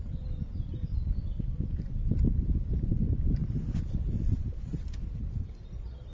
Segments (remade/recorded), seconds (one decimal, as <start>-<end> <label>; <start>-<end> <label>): 0.0-3.4 recorded; 3.4-5.3 remade; 5.3-6.1 recorded